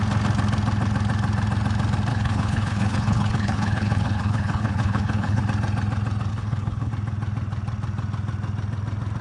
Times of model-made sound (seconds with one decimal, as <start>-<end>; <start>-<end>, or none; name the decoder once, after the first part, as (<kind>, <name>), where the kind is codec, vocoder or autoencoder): 2.1-5.4 (codec, HILCodec); 6.3-6.9